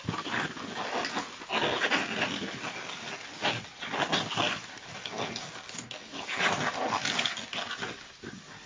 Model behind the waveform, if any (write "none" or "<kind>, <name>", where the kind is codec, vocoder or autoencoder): none